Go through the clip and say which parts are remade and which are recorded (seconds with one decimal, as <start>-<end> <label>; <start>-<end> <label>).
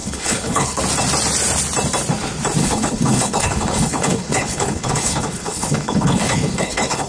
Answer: 0.0-0.8 remade; 0.8-2.6 recorded; 2.6-7.1 remade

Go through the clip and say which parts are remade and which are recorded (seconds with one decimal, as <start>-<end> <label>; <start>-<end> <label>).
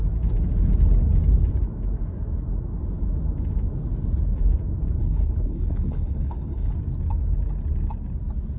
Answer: 0.0-5.0 recorded; 5.0-6.7 remade; 6.7-8.6 recorded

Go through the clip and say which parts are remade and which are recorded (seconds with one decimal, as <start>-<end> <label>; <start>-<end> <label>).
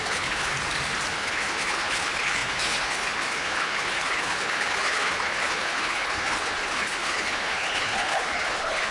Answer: 0.0-0.5 remade; 0.5-1.1 recorded; 1.1-8.9 remade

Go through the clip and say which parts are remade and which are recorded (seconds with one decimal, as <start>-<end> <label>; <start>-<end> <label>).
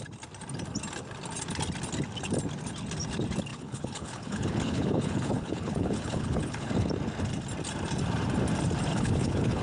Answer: 0.0-3.5 recorded; 3.5-6.7 remade; 6.7-8.9 recorded; 8.9-9.6 remade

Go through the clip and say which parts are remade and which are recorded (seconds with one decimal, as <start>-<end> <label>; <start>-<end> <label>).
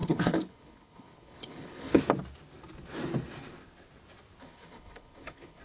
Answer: 0.0-2.0 remade; 2.0-4.4 recorded; 4.4-5.6 remade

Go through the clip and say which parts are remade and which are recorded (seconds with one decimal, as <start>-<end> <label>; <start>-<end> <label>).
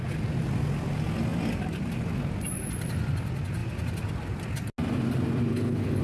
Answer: 0.0-5.5 recorded; 5.5-6.0 remade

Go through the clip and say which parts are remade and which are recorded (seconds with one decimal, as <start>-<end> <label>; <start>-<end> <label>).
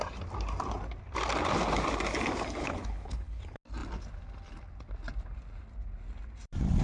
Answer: 0.0-2.6 recorded; 2.6-3.4 remade; 3.4-6.8 recorded